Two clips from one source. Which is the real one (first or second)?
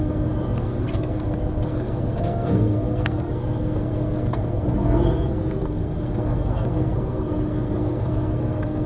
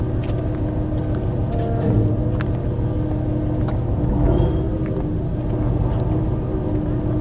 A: second